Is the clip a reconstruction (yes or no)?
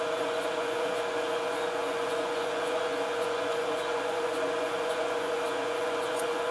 yes